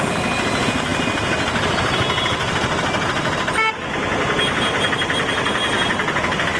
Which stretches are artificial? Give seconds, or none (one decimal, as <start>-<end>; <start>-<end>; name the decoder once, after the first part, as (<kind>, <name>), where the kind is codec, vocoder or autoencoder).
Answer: none